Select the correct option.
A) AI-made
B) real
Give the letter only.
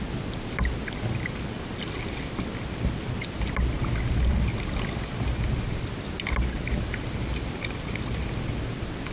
B